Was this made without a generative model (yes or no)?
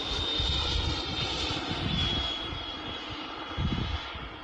no